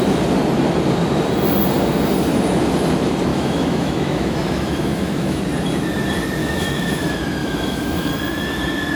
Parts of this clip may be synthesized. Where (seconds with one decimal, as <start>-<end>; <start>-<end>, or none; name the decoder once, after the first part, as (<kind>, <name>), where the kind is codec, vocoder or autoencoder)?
3.3-5.4 (autoencoder, DAC-VAE); 6.4-7.0; 7.4-8.1